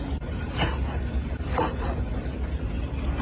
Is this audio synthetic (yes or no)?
no